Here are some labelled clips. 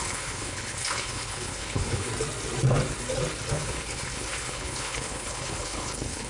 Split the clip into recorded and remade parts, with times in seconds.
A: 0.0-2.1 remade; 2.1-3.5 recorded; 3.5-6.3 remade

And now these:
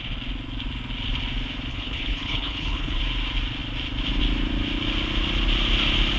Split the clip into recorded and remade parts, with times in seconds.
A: 0.0-1.7 recorded; 1.7-3.0 remade; 3.0-6.2 recorded

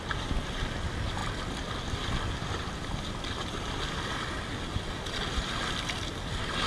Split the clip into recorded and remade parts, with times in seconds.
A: 0.0-6.7 recorded

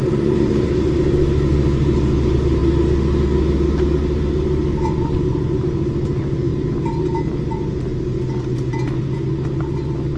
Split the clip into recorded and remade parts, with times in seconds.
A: 0.0-10.2 recorded

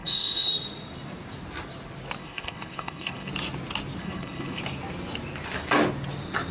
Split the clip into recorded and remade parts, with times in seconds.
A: 0.0-0.5 remade; 0.5-2.2 recorded; 2.2-3.3 remade; 3.3-4.0 recorded; 4.0-4.6 remade; 4.6-6.5 recorded

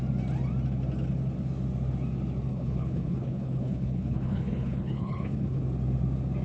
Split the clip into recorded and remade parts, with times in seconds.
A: 0.0-2.5 recorded; 2.5-5.6 remade; 5.6-6.4 recorded